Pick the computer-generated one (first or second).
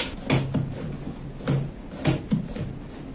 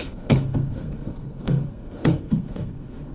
second